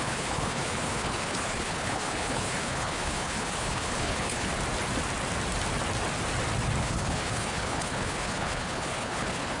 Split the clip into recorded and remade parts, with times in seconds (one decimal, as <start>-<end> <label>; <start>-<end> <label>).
0.0-4.5 remade; 4.5-6.8 recorded; 6.8-9.6 remade